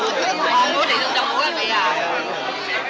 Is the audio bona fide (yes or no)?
yes